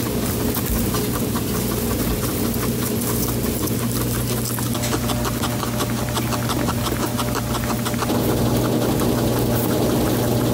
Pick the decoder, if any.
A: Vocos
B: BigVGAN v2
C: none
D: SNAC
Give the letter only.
C